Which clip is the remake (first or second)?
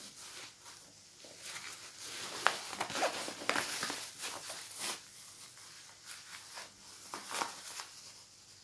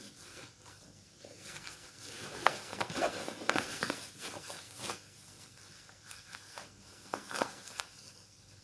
second